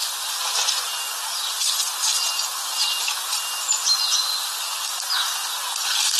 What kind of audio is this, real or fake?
real